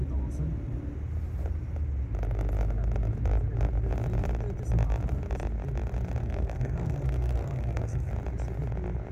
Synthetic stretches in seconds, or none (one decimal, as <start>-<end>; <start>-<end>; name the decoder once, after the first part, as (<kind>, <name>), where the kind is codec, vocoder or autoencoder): 6.2-8.1 (codec, SNAC)